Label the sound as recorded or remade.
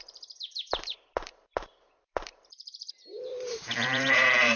remade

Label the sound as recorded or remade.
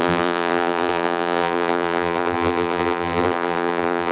remade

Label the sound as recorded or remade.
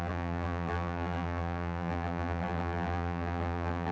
remade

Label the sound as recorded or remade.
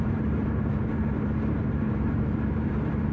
remade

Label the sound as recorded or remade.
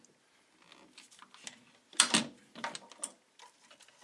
recorded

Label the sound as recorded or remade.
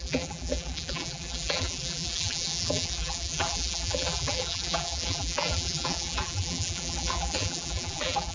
remade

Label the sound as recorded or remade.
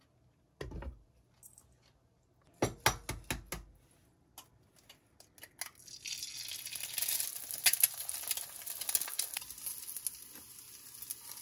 recorded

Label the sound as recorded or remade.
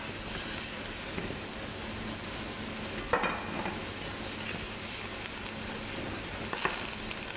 recorded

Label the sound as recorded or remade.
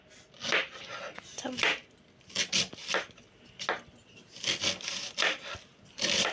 recorded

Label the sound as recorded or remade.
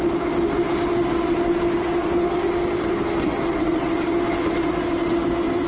recorded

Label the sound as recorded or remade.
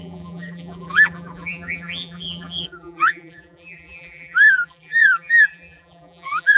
remade